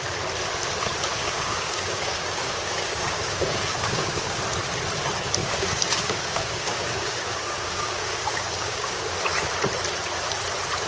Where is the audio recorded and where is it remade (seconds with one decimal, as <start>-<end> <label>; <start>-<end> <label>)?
0.0-1.2 recorded; 1.2-4.4 remade; 4.4-5.4 recorded; 5.4-9.2 remade; 9.2-10.9 recorded